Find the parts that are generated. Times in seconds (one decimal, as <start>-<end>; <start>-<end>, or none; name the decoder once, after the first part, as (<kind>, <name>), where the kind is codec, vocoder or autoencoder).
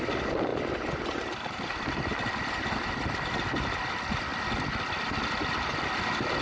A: none